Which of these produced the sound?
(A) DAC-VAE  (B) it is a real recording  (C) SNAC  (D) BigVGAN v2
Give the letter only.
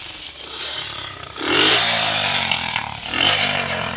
D